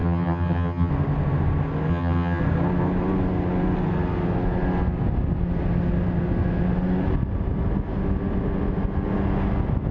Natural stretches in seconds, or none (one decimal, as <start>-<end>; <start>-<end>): 0.9-1.9; 2.4-9.9